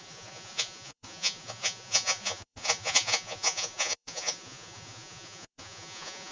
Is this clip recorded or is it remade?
remade